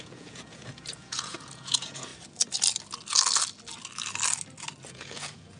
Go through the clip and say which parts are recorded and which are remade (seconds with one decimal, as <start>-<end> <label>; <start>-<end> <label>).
0.0-2.1 remade; 2.1-4.9 recorded; 4.9-5.6 remade